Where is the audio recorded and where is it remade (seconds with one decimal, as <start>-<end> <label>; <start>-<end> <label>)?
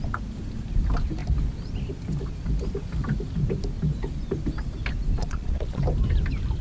0.0-5.2 recorded; 5.2-5.8 remade; 5.8-6.6 recorded